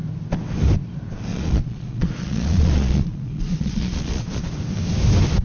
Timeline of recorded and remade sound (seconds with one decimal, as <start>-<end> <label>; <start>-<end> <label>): 0.0-1.3 recorded; 1.3-4.5 remade; 4.5-5.4 recorded